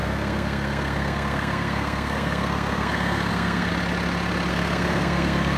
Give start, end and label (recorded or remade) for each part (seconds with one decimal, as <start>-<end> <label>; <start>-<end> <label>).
0.0-3.7 remade; 3.7-4.5 recorded; 4.5-5.6 remade